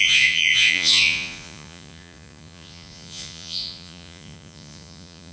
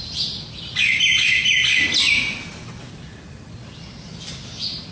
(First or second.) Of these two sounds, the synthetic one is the first